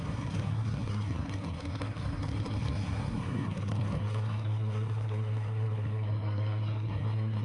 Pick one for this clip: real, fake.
fake